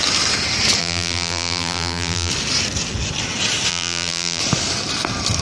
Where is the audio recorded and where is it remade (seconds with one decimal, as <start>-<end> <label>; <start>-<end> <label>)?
0.0-0.8 recorded; 0.8-2.3 remade; 2.3-3.7 recorded; 3.7-4.4 remade; 4.4-5.4 recorded